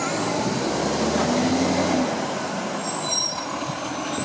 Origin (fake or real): real